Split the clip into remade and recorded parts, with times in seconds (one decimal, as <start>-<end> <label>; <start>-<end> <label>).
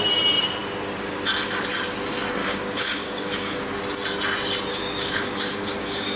0.0-2.4 recorded; 2.4-3.7 remade; 3.7-4.7 recorded; 4.7-6.2 remade